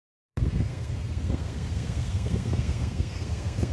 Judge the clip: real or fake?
fake